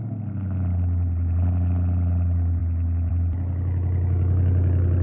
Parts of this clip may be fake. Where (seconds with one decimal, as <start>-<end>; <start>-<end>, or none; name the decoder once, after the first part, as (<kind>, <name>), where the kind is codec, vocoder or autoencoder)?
none